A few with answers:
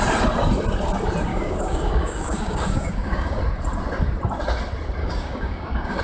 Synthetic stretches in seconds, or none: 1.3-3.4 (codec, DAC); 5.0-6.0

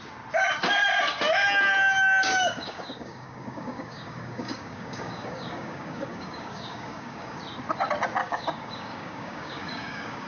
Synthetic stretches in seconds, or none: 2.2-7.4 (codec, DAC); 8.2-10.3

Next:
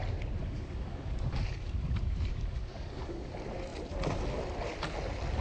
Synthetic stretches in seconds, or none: 0.4-3.3 (codec, DAC)